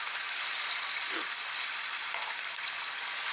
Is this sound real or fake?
fake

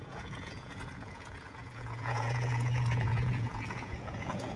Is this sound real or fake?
fake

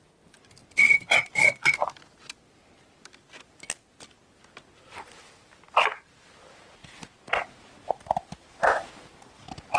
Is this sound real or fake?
real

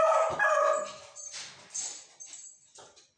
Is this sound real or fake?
real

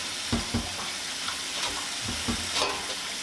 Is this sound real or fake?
real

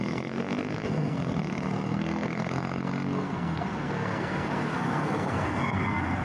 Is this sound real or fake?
fake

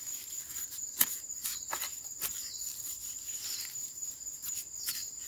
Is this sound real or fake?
real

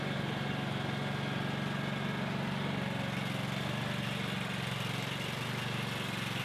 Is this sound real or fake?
real